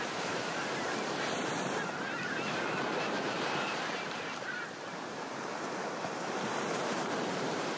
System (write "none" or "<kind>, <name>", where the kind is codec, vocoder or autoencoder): vocoder, BigVGAN v2